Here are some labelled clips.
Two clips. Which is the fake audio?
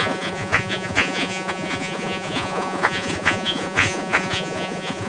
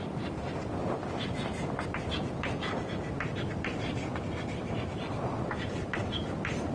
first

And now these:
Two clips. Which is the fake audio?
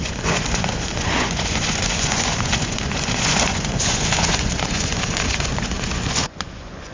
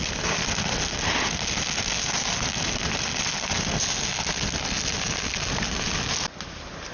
first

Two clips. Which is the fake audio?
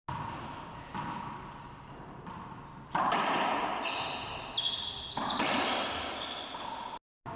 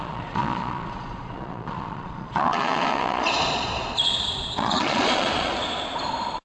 second